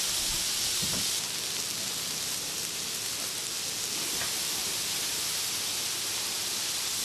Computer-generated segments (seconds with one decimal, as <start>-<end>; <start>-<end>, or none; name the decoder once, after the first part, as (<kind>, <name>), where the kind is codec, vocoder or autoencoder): 4.6-5.3 (vocoder, BigVGAN v2)